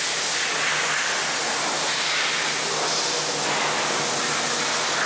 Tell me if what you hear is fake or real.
real